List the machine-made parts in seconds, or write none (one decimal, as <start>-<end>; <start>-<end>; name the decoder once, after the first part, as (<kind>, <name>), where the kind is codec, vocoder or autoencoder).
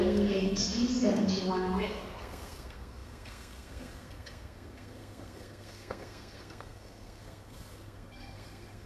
0.0-8.9 (codec, SNAC)